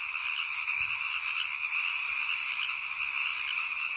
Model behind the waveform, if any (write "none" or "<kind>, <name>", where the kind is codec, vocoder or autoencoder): none